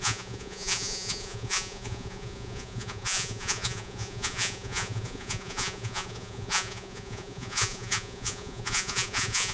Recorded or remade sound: remade